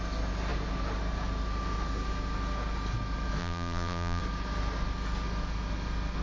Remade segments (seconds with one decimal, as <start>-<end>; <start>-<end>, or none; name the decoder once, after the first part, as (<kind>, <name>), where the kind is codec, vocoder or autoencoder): 3.4-4.2 (vocoder, BigVGAN v2)